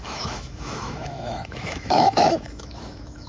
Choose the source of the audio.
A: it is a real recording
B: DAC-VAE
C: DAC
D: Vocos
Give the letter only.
B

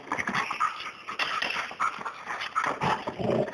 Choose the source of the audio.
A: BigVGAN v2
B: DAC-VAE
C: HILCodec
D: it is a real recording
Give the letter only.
A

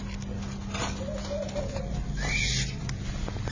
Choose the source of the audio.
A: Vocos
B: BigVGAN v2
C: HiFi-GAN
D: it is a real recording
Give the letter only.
D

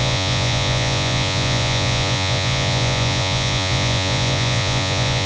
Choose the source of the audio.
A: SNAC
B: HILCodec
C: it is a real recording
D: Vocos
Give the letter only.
D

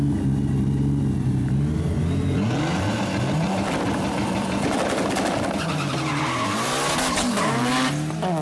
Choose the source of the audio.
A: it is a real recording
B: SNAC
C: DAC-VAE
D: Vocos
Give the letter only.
A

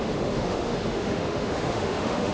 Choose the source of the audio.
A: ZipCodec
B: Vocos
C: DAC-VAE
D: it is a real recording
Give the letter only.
C